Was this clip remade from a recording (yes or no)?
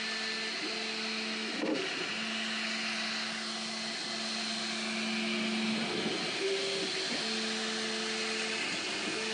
no